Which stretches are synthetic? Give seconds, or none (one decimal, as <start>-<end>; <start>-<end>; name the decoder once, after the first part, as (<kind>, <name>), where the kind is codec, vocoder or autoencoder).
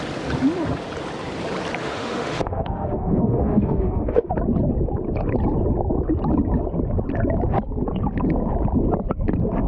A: 1.8-4.3 (autoencoder, DAC-VAE)